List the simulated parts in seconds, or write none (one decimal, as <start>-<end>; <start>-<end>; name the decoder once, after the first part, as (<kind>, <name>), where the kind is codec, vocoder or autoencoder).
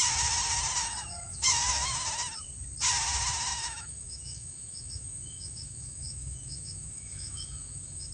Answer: 0.8-2.0 (autoencoder, DAC-VAE); 3.5-8.1